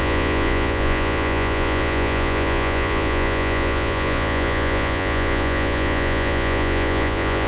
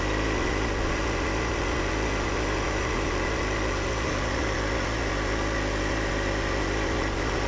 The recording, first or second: second